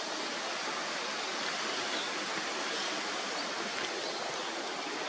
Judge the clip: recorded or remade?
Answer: recorded